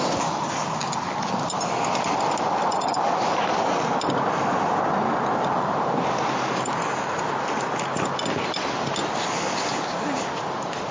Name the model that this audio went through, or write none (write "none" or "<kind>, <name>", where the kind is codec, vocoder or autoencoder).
none